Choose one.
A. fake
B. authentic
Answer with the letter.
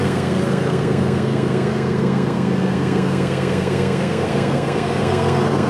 A